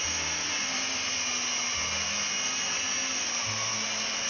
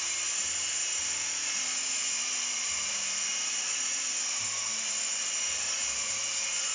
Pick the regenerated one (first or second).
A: second